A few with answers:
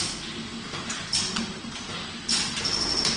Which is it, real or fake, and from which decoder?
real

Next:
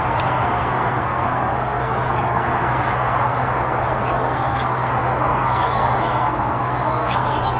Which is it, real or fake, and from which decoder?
fake, codec, SNAC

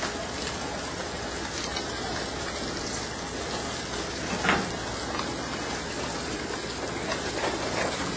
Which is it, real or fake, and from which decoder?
real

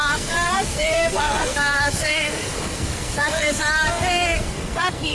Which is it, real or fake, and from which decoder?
fake, codec, SNAC